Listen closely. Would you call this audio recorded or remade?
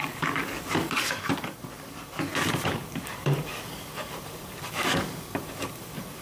remade